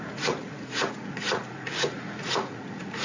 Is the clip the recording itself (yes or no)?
no